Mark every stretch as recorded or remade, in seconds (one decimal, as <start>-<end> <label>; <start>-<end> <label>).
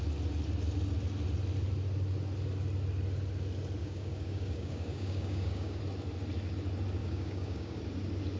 0.0-3.8 recorded; 3.8-5.8 remade; 5.8-7.0 recorded; 7.0-7.8 remade; 7.8-8.4 recorded